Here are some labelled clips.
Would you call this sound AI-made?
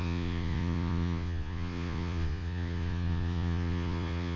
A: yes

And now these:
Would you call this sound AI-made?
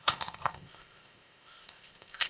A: yes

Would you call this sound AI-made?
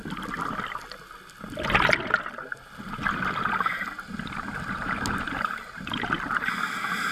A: no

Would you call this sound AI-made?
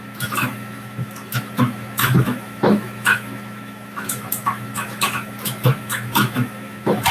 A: yes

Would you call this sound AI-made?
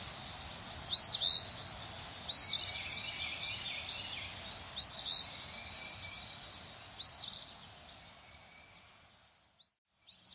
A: no